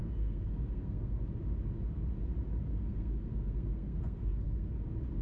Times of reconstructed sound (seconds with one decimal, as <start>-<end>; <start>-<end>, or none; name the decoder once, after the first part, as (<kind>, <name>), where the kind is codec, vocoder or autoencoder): 0.0-1.2 (codec, SNAC); 2.7-4.7